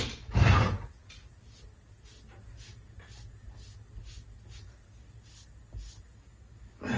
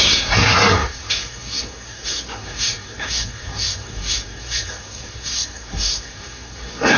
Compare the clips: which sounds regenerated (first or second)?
second